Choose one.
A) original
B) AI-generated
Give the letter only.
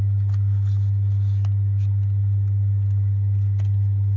A